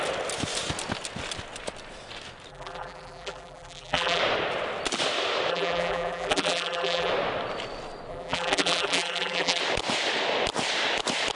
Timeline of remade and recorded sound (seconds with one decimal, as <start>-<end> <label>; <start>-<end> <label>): 0.0-2.5 recorded; 2.5-4.2 remade; 4.2-5.5 recorded; 5.5-7.1 remade; 7.1-8.1 recorded; 8.1-9.6 remade; 9.6-11.4 recorded